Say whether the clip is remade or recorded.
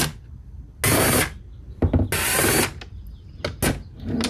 recorded